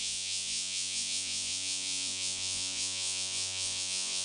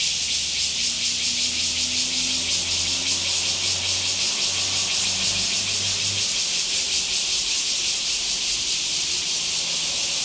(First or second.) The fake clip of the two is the first